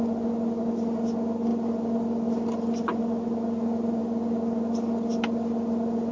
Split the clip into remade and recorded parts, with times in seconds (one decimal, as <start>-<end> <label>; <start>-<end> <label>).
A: 0.0-6.1 recorded